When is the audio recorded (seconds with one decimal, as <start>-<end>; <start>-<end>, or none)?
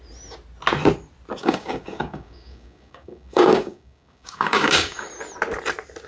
0.0-1.4; 5.1-6.1